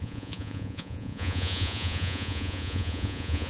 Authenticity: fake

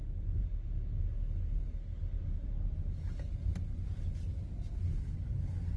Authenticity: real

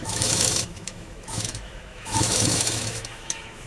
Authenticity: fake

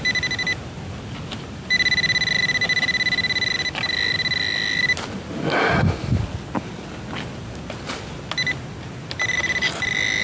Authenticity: real